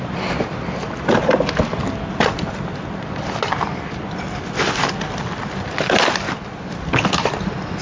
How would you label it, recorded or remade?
recorded